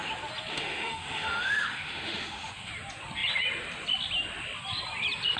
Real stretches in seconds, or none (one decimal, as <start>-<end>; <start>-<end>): 0.0-0.5; 2.7-5.4